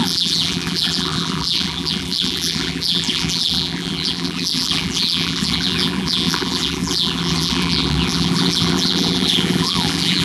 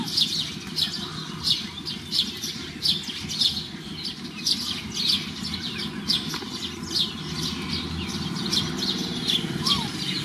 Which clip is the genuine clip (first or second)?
second